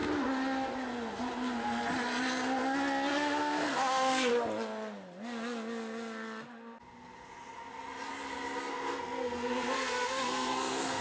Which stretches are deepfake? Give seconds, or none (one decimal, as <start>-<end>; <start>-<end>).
3.1-4.3; 8.7-11.0